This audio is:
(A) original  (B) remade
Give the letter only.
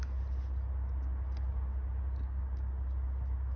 A